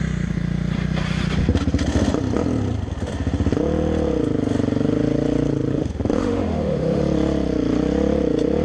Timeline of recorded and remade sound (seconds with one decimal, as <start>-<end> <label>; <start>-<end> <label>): 0.0-5.7 recorded; 5.7-7.0 remade; 7.0-8.6 recorded